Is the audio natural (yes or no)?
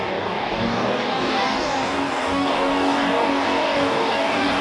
no